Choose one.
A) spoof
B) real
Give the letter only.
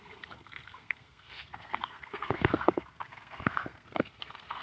A